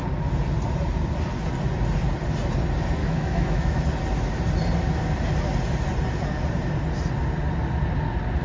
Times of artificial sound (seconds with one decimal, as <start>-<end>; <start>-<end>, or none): 3.0-3.8